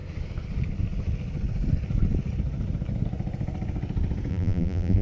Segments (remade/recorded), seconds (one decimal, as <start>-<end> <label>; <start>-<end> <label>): 0.0-4.3 recorded; 4.3-5.0 remade